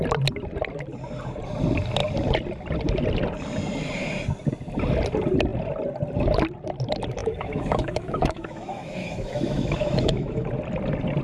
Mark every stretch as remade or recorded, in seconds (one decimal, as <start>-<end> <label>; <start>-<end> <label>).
0.0-7.2 recorded; 7.2-10.5 remade; 10.5-11.2 recorded